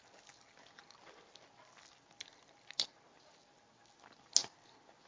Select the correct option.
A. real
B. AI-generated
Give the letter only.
A